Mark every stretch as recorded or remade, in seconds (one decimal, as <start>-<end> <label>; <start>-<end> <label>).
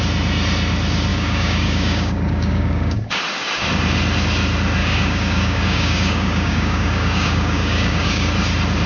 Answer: 0.0-1.1 recorded; 1.1-3.2 remade; 3.2-4.8 recorded; 4.8-8.3 remade; 8.3-8.9 recorded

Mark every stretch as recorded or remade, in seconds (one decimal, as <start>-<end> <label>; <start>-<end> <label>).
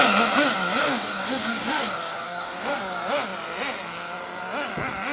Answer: 0.0-0.8 recorded; 0.8-2.8 remade; 2.8-5.1 recorded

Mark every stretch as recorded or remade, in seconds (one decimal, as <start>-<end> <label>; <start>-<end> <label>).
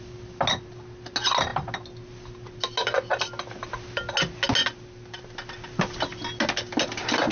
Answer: 0.0-7.3 recorded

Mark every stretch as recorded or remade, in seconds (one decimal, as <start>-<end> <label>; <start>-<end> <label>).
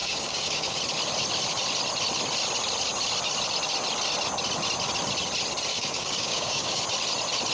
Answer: 0.0-0.8 remade; 0.8-5.7 recorded; 5.7-6.8 remade; 6.8-7.5 recorded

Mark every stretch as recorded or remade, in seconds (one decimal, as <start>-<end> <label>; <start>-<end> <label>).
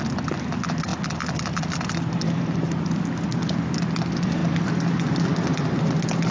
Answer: 0.0-6.3 recorded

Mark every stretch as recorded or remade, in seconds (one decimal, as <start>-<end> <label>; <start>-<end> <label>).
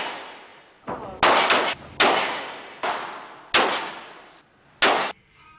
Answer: 0.0-5.6 recorded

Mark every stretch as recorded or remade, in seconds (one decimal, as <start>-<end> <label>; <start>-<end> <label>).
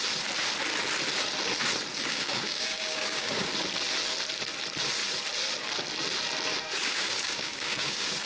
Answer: 0.0-1.9 recorded; 1.9-3.5 remade; 3.5-6.7 recorded; 6.7-8.3 remade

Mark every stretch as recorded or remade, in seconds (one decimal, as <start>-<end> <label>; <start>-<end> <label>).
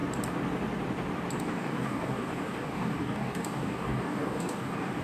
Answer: 0.0-1.4 recorded; 1.4-5.0 remade